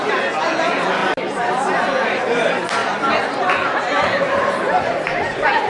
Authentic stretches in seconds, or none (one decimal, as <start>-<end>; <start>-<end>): 0.0-5.7